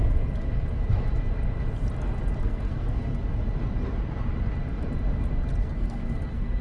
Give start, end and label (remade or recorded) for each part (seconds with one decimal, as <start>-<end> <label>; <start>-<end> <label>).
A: 0.0-2.4 recorded; 2.4-3.2 remade; 3.2-5.6 recorded; 5.6-6.6 remade